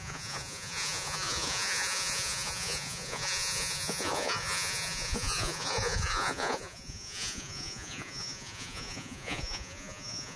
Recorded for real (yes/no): no